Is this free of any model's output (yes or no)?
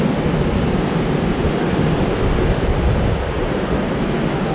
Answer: yes